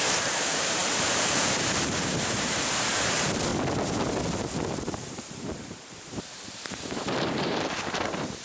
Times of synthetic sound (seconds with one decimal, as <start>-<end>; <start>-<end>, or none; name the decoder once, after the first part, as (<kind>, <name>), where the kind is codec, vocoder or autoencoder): 0.0-3.5 (vocoder, BigVGAN v2); 4.7-8.4